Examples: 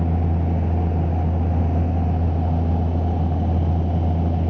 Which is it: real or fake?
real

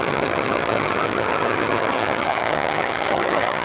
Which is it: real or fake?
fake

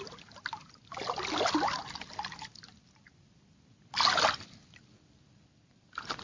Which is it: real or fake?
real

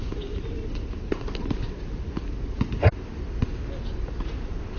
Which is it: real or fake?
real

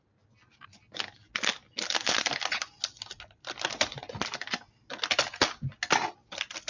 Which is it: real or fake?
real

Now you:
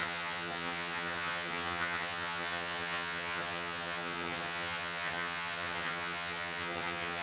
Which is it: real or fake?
fake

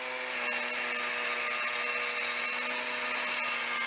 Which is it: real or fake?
real